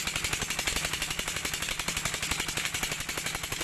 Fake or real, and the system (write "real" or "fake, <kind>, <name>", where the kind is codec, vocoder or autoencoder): real